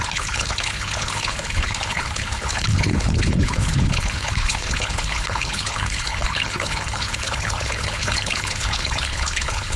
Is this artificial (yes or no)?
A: yes